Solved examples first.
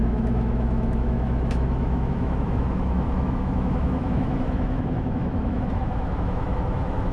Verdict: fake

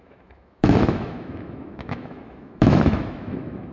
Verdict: fake